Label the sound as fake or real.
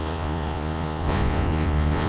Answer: fake